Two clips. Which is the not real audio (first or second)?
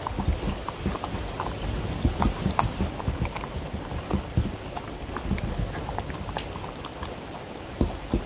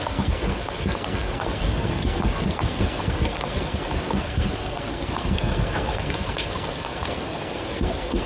second